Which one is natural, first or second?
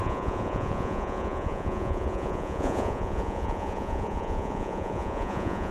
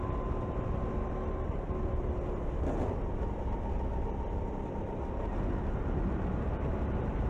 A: second